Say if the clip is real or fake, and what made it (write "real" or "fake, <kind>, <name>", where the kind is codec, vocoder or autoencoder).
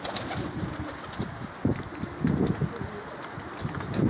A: real